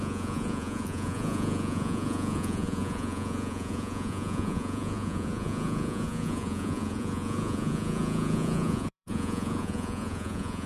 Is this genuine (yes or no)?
no